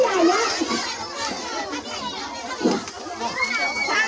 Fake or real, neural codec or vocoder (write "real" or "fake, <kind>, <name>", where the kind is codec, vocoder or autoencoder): real